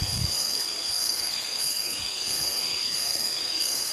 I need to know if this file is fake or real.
fake